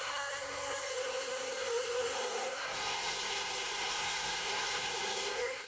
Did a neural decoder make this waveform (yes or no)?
yes